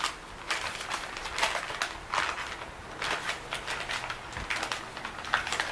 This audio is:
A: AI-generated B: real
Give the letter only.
B